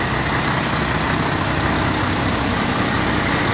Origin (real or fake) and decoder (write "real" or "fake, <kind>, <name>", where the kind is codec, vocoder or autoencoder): real